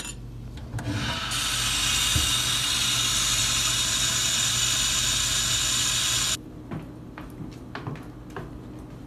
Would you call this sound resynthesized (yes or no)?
no